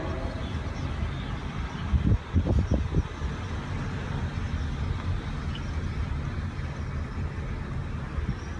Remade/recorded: recorded